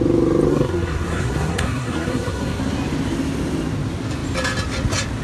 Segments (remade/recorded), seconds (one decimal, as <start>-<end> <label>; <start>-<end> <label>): 0.0-0.5 recorded; 0.5-2.6 remade; 2.6-5.2 recorded